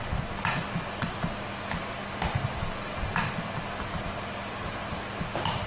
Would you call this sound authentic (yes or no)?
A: yes